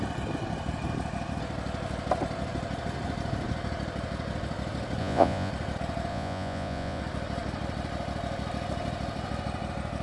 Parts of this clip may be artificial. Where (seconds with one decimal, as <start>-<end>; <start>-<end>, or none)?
5.0-5.5; 6.1-7.0